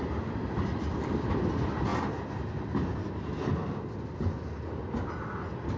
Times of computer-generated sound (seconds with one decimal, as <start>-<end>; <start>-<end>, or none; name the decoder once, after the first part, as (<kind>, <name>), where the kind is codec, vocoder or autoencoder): none